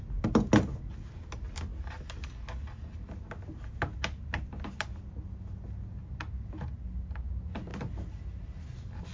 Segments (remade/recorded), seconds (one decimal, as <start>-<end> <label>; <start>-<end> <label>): 0.0-9.1 recorded